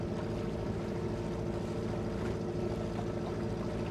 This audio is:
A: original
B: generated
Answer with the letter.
A